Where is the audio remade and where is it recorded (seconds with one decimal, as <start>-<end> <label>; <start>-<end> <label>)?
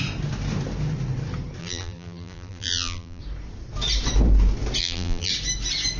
0.0-1.6 recorded; 1.6-3.2 remade; 3.2-4.8 recorded; 4.8-5.3 remade; 5.3-6.0 recorded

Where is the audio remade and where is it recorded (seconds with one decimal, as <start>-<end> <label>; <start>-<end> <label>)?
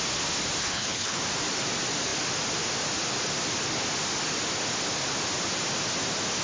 0.0-0.6 recorded; 0.6-1.2 remade; 1.2-6.4 recorded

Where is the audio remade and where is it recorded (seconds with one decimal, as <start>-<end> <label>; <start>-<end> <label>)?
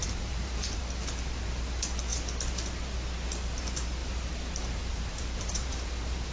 0.0-0.8 remade; 0.8-4.0 recorded; 4.0-6.3 remade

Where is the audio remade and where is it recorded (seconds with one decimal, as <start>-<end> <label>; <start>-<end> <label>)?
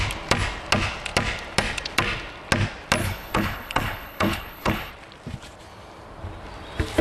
0.0-3.0 recorded; 3.0-4.9 remade; 4.9-7.0 recorded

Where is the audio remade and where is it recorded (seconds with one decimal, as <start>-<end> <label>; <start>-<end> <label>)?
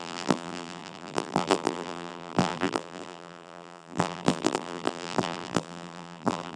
0.0-6.6 remade